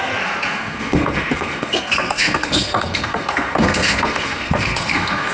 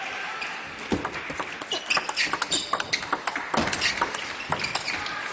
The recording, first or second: second